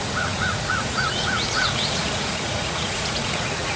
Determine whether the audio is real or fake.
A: fake